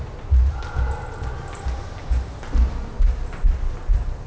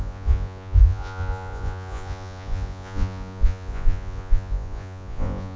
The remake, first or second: second